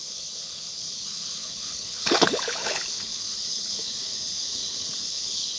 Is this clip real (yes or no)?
no